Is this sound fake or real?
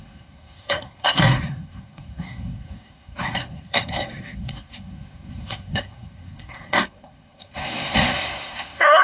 fake